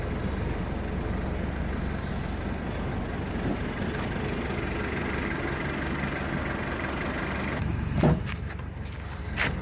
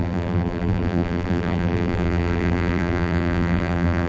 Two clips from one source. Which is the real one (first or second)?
first